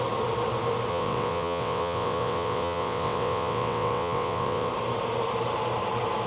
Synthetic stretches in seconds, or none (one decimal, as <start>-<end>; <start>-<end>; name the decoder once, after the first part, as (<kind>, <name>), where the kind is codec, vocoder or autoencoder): 0.9-4.7 (vocoder, WaveNeXt)